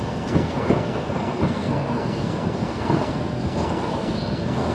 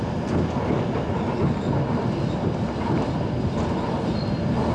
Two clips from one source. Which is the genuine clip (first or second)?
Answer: second